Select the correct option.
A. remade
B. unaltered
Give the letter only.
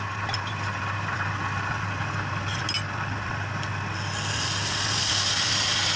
B